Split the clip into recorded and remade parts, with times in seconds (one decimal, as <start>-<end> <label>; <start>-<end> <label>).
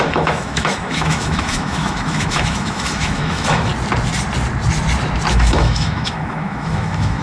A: 0.0-3.7 remade; 3.7-5.3 recorded; 5.3-7.2 remade